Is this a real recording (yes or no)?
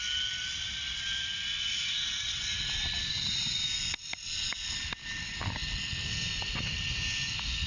yes